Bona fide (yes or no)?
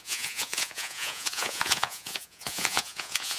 no